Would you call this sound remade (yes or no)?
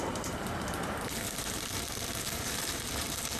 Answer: yes